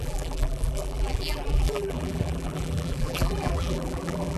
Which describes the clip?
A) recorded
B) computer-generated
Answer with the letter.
B